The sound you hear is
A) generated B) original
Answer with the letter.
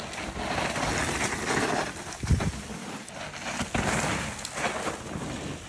B